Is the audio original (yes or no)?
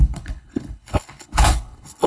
no